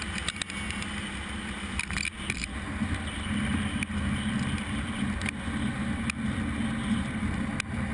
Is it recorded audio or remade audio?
recorded